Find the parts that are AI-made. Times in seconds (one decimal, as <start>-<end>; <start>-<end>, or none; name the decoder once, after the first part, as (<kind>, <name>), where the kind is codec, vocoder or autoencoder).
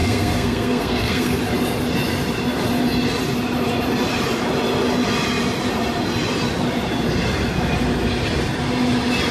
0.0-1.4 (codec, SNAC)